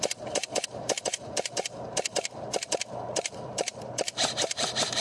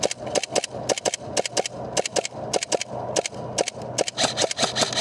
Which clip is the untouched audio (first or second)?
second